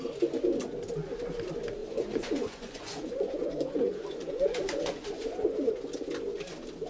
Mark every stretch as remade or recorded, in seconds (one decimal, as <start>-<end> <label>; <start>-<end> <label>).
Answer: 0.0-1.8 recorded; 1.8-5.7 remade; 5.7-6.9 recorded